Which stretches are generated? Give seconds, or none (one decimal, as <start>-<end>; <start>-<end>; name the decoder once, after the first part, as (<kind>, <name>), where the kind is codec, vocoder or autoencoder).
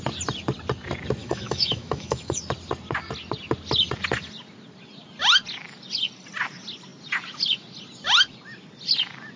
1.2-2.4 (autoencoder, DAC-VAE)